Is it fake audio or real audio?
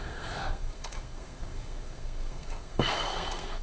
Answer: fake